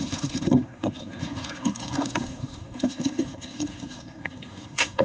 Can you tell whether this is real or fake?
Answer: fake